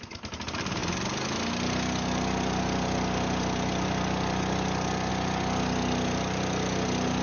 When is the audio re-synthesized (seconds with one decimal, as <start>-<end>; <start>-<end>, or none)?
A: none